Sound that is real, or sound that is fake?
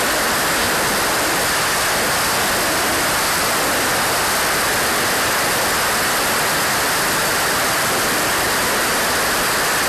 real